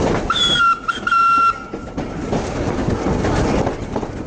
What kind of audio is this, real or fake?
real